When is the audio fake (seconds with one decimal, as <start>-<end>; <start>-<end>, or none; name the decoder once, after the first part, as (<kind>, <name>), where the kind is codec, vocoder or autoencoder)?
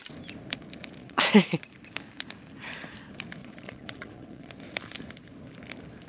1.0-1.6 (vocoder, Vocos); 3.4-4.5